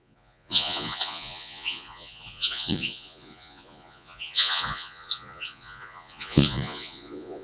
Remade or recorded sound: remade